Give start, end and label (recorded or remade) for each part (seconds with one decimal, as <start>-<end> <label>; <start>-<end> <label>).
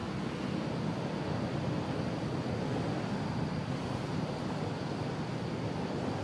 0.0-6.2 recorded